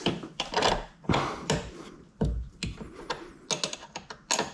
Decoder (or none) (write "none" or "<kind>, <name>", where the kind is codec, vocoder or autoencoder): none